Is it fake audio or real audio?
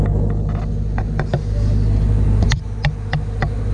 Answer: real